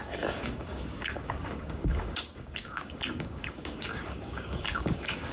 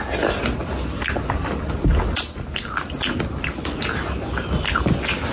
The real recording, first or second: second